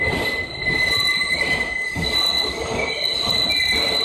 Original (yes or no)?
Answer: yes